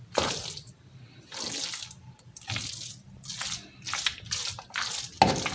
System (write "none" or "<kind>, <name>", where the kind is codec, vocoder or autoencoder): none